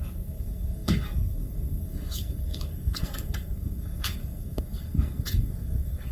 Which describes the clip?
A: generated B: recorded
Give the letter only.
A